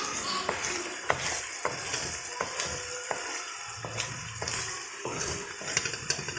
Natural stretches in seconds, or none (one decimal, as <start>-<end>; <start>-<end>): 0.0-4.9; 5.5-6.4